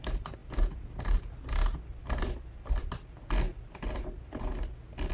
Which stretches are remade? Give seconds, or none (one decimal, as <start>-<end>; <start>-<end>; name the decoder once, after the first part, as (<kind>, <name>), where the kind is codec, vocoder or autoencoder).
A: 2.0-2.9 (vocoder, BigVGAN v2)